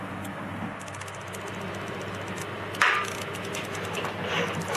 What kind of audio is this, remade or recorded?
recorded